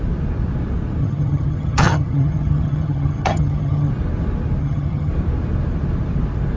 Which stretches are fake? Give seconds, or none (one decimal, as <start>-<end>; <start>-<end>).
1.0-3.9; 4.6-5.1